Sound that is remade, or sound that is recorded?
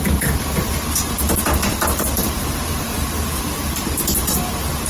remade